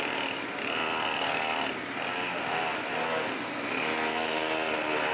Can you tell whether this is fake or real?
real